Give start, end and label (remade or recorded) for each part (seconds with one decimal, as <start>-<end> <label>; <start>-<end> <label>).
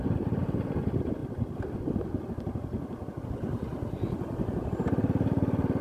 0.0-5.8 recorded